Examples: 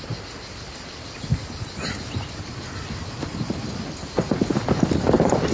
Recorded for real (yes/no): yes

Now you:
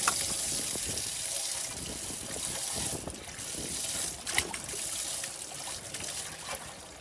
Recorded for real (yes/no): yes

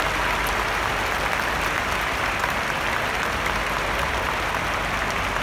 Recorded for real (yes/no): yes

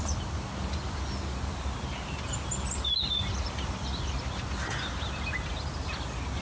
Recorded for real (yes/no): yes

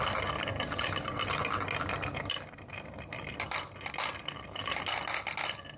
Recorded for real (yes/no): yes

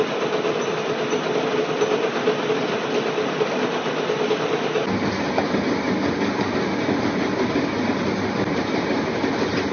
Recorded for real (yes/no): yes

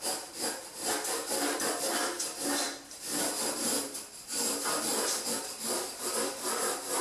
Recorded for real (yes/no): no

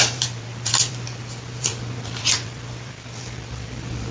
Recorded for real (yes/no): no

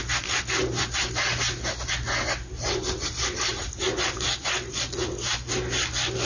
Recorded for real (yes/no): yes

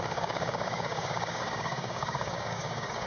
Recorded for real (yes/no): no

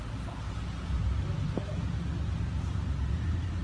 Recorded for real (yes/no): yes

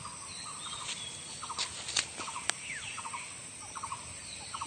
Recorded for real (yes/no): yes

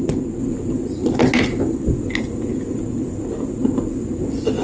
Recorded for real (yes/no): yes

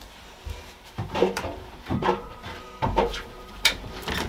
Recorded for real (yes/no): no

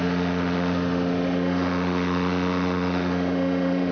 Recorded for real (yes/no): no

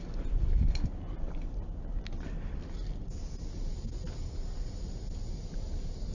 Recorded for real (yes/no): yes